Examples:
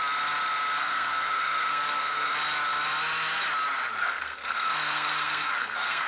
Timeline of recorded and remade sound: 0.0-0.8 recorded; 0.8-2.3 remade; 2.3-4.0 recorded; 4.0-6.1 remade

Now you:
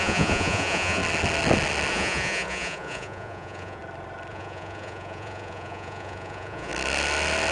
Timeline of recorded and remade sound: 0.0-1.0 remade; 1.0-1.9 recorded; 1.9-3.8 remade; 3.8-4.3 recorded; 4.3-6.7 remade; 6.7-7.5 recorded

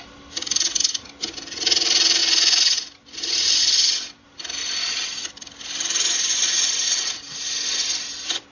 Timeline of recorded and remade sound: 0.0-8.5 recorded

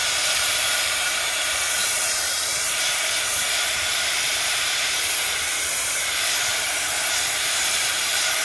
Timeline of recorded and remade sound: 0.0-8.4 remade

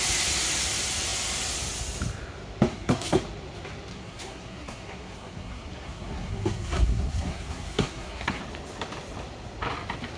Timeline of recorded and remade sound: 0.0-2.7 recorded; 2.7-3.2 remade; 3.2-3.9 recorded; 3.9-8.4 remade; 8.4-10.2 recorded